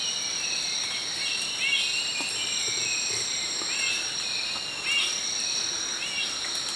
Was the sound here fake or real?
real